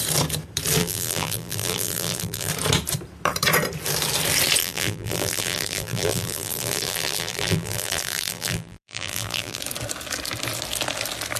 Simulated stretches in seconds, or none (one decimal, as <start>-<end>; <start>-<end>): 0.8-2.5; 4.6-9.6